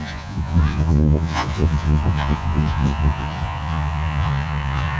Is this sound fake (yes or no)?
yes